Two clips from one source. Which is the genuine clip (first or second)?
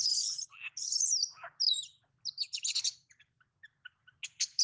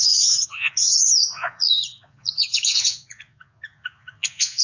first